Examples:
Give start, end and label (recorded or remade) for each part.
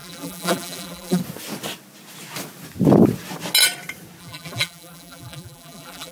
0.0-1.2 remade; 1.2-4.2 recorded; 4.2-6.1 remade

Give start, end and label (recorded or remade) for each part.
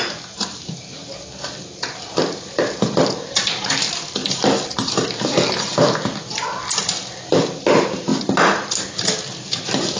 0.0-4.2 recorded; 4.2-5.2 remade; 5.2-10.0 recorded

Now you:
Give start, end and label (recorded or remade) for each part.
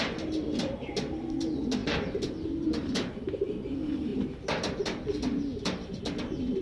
0.0-4.1 recorded; 4.1-6.0 remade; 6.0-6.6 recorded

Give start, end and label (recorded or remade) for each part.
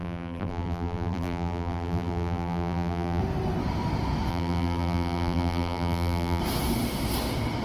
0.0-3.2 remade; 3.2-4.3 recorded; 4.3-6.4 remade; 6.4-7.6 recorded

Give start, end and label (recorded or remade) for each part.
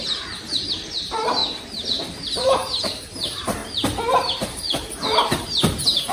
0.0-1.4 remade; 1.4-2.1 recorded; 2.1-3.6 remade; 3.6-6.1 recorded